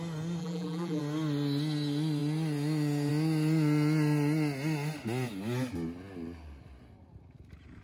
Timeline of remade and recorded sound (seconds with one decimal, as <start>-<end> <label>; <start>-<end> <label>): 0.0-0.4 recorded; 0.4-1.0 remade; 1.0-7.8 recorded